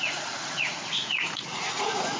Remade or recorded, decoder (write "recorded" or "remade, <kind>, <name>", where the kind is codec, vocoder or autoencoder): remade, vocoder, Vocos